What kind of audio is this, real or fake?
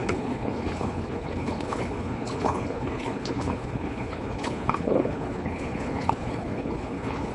fake